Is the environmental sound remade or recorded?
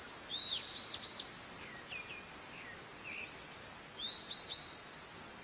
recorded